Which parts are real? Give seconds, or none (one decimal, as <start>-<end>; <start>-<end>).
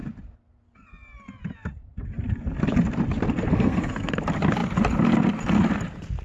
0.0-3.5; 4.1-6.2